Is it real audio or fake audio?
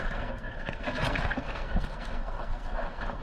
fake